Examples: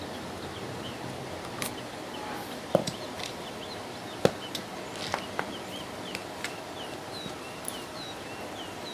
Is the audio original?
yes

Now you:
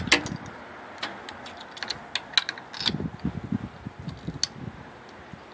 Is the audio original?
yes